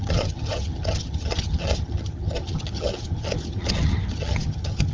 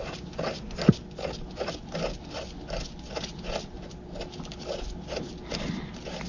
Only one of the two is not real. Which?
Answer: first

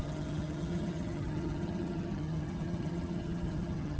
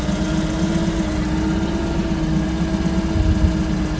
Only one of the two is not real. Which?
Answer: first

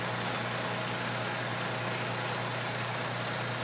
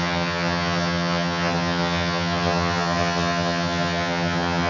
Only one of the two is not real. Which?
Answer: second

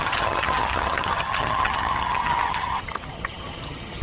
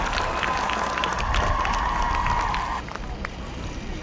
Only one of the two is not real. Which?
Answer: first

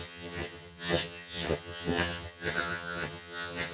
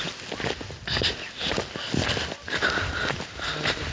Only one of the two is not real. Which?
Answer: first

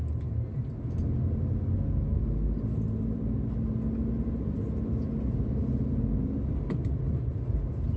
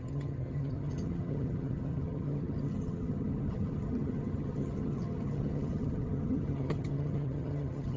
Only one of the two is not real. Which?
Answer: second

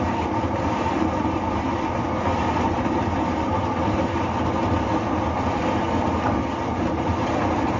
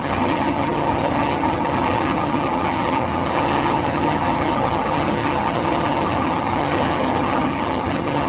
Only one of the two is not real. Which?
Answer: second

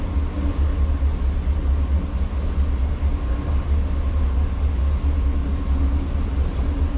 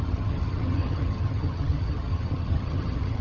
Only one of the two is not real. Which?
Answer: second